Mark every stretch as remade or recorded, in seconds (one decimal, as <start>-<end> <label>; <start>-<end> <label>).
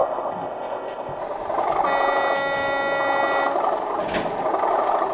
0.0-1.2 remade; 1.2-5.1 recorded